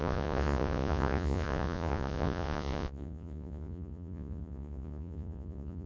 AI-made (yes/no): yes